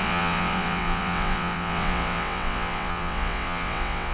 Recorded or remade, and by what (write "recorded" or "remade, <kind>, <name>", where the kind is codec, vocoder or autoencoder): remade, vocoder, WaveNeXt